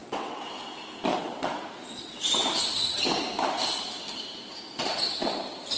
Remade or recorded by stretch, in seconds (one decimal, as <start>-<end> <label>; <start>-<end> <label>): 0.0-0.5 remade; 0.5-1.1 recorded; 1.1-1.6 remade; 1.6-5.8 recorded

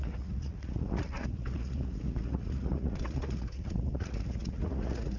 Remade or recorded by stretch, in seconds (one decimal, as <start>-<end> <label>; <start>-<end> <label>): 0.0-5.2 remade